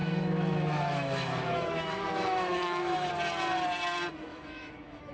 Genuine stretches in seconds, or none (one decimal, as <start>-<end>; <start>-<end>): 3.1-4.3